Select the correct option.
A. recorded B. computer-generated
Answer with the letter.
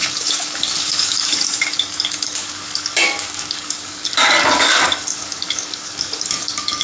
B